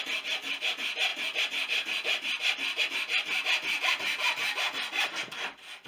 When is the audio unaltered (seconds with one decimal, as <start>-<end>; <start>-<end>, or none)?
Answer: 0.0-5.9